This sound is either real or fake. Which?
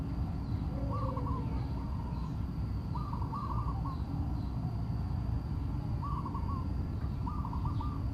real